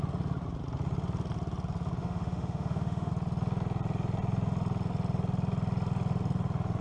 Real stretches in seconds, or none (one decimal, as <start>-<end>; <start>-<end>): 0.0-2.0; 3.1-6.8